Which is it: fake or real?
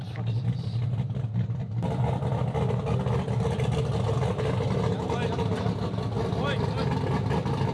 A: real